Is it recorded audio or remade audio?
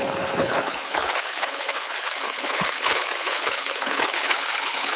remade